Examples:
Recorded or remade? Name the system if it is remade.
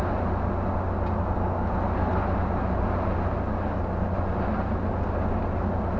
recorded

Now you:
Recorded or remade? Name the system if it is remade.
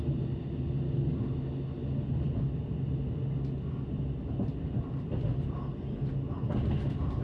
recorded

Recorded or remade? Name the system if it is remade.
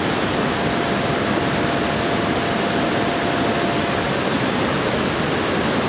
recorded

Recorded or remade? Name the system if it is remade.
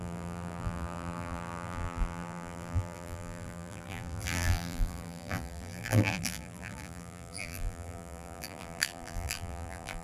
remade, vocoder, BigVGAN v2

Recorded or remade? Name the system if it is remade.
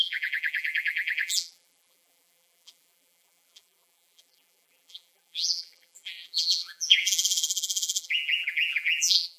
remade, vocoder, BigVGAN v2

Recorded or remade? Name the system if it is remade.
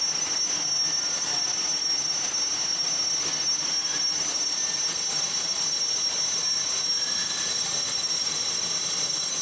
recorded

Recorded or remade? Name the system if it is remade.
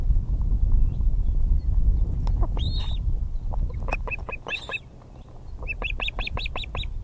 recorded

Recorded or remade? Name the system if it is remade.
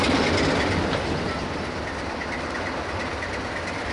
recorded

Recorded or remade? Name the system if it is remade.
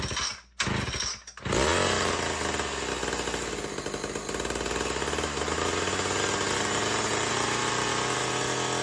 recorded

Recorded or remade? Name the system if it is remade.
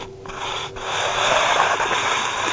recorded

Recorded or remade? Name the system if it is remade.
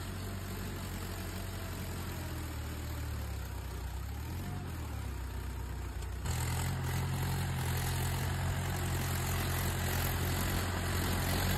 recorded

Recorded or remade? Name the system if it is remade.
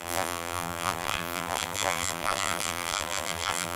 remade, vocoder, BigVGAN v2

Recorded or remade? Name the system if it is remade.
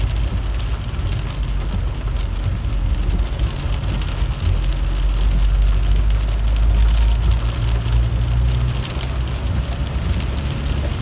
recorded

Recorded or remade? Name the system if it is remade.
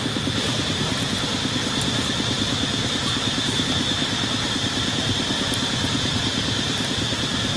remade, vocoder, BigVGAN v2